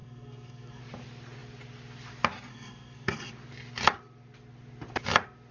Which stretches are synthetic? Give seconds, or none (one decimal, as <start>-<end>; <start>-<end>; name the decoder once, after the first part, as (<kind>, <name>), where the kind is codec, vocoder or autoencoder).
0.0-0.8 (codec, SNAC); 2.5-3.3